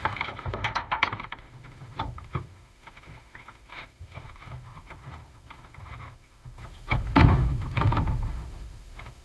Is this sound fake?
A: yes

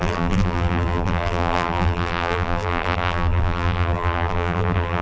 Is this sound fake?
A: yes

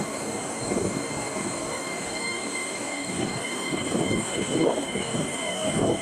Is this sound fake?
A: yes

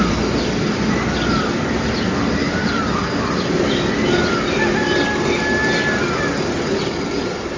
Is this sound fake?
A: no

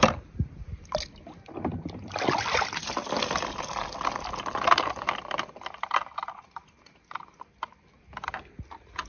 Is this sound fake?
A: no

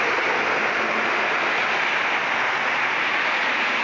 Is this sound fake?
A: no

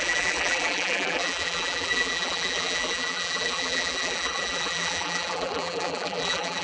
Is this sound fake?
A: yes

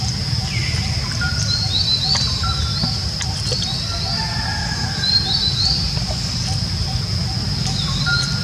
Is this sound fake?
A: no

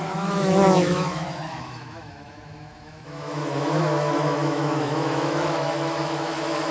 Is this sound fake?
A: yes